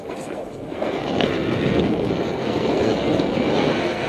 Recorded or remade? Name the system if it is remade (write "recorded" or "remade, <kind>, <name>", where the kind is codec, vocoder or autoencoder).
remade, codec, SNAC